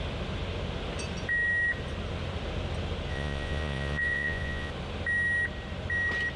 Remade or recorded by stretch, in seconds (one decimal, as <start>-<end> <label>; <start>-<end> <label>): 0.0-3.1 recorded; 3.1-4.7 remade; 4.7-6.4 recorded